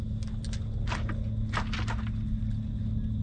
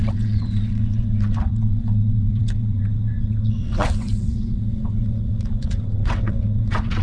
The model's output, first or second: second